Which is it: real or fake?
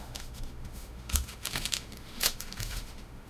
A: fake